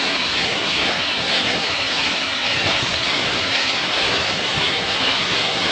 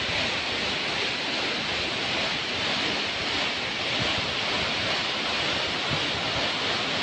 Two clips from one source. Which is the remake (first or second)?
first